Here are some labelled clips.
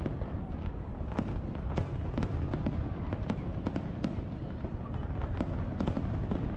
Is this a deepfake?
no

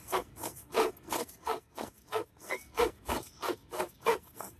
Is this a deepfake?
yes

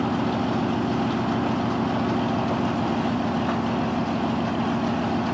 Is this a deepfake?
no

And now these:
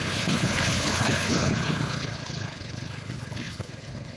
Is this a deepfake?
yes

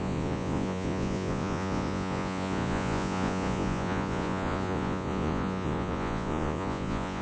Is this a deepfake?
yes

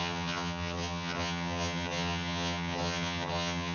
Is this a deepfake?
yes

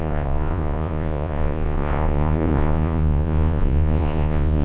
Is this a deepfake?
yes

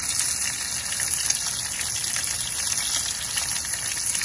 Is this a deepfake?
no